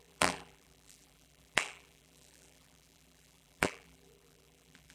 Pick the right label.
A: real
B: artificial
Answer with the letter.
B